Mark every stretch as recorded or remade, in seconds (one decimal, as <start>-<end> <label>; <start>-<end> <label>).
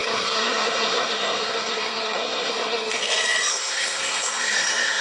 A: 0.0-3.0 remade; 3.0-3.5 recorded; 3.5-5.0 remade